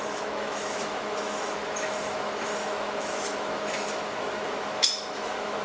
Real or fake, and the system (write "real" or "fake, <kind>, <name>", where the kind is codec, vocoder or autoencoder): fake, autoencoder, DAC-VAE